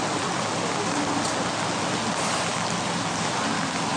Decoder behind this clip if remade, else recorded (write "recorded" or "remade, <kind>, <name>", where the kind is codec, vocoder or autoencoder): recorded